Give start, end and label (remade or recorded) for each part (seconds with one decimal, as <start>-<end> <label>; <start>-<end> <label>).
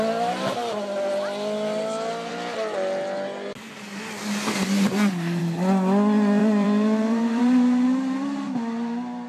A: 0.0-6.4 recorded; 6.4-7.4 remade; 7.4-9.3 recorded